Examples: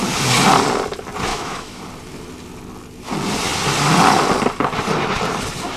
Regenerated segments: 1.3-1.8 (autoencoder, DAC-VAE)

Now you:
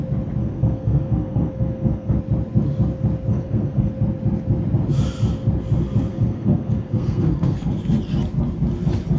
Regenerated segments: 0.4-2.2 (codec, SNAC); 3.3-3.9; 6.1-7.8

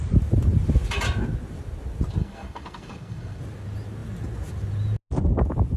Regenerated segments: 2.2-3.4 (codec, SNAC)